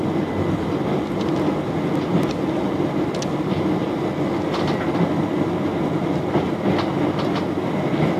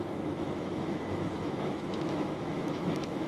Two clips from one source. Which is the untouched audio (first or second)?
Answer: first